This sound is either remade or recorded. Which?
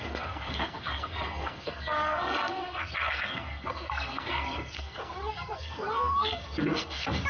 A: remade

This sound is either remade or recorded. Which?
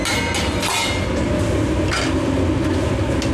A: recorded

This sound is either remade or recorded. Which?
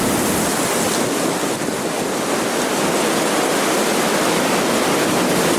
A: recorded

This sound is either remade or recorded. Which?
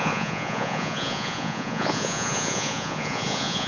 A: remade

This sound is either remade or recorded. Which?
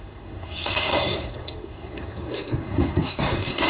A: remade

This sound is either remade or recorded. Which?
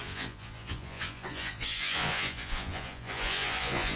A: remade